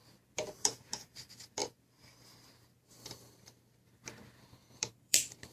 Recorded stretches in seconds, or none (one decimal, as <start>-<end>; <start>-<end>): none